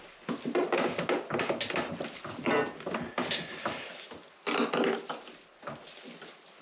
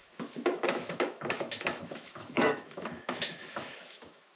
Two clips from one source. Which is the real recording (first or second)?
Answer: first